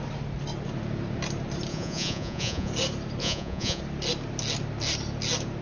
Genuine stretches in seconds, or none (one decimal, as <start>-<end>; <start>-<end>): 0.0-1.7; 2.7-3.2; 3.8-5.6